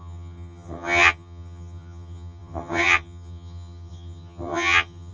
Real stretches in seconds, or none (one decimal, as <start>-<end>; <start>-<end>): none